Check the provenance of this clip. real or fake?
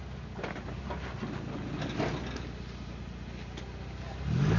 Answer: real